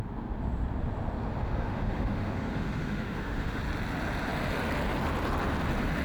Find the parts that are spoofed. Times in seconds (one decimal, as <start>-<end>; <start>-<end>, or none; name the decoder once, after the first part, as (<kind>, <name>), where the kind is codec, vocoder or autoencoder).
1.4-3.6 (autoencoder, DAC-VAE)